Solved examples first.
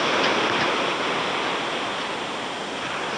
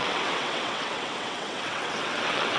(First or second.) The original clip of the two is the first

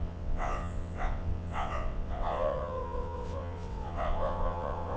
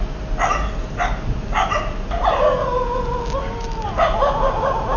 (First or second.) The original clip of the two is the second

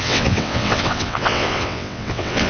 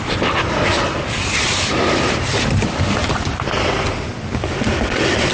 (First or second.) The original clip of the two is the second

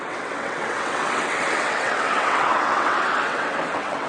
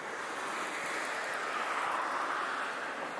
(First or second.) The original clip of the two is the second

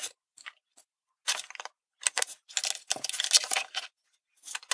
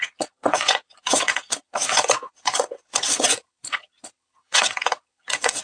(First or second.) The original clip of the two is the first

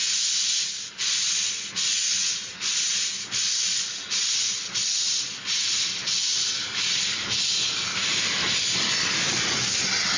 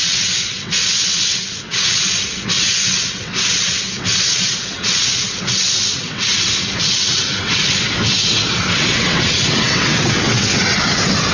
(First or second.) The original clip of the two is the first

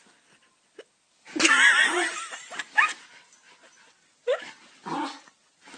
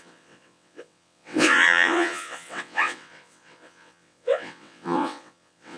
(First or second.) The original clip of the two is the first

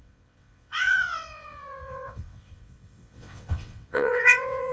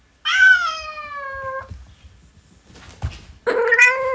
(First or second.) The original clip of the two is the second